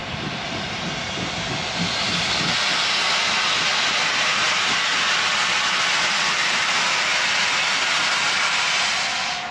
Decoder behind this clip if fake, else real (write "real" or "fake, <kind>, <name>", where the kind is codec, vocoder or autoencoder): real